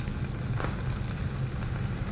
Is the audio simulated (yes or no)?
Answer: no